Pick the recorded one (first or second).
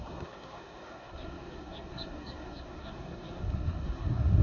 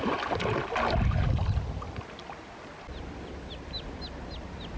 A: second